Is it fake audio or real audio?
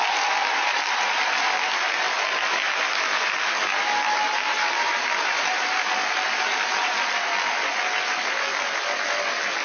real